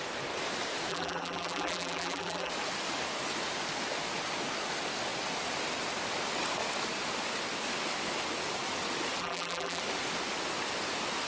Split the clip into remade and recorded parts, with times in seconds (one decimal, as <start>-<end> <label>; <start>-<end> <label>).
0.0-0.9 recorded; 0.9-2.5 remade; 2.5-9.2 recorded; 9.2-9.8 remade; 9.8-11.3 recorded